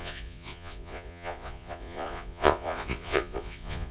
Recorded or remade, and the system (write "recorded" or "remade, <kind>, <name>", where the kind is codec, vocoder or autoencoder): remade, vocoder, Vocos